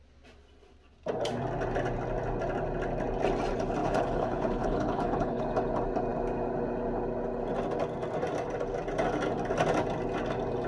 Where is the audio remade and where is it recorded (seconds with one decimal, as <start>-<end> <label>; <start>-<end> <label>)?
0.0-3.8 recorded; 3.8-5.4 remade; 5.4-10.7 recorded

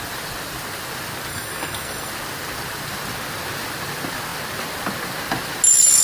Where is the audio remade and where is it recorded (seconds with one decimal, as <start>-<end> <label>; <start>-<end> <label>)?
0.0-1.3 recorded; 1.3-2.1 remade; 2.1-6.0 recorded

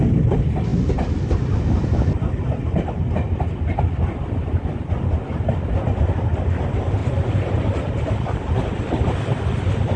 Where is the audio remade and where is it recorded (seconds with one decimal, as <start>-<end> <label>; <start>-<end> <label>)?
0.0-10.0 recorded

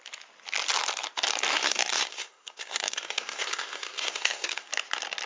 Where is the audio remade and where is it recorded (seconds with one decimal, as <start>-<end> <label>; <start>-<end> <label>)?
0.0-1.5 recorded; 1.5-4.7 remade; 4.7-5.3 recorded

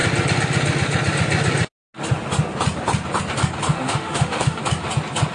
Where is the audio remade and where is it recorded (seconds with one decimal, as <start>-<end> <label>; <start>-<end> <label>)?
0.0-3.7 recorded; 3.7-4.6 remade; 4.6-5.3 recorded